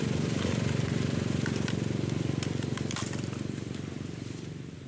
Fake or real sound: real